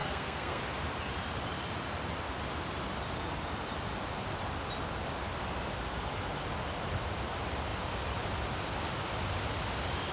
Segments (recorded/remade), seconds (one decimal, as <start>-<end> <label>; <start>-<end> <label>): 0.0-0.6 remade; 0.6-10.1 recorded